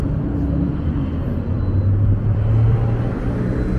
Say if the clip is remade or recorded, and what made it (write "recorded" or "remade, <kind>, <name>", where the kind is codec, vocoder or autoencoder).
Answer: recorded